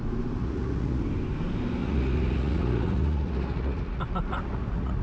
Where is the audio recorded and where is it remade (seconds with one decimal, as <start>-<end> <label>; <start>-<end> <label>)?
0.0-0.4 recorded; 0.4-1.0 remade; 1.0-1.8 recorded; 1.8-5.0 remade